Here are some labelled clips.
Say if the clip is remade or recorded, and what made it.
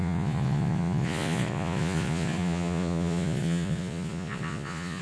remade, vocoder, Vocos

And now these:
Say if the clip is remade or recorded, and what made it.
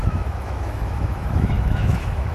remade, autoencoder, DAC-VAE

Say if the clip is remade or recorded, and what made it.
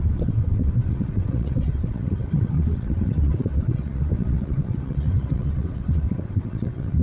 remade, vocoder, WaveNeXt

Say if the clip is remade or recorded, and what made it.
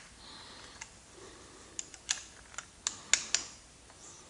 recorded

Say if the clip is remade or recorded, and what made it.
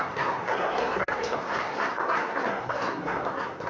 remade, codec, SNAC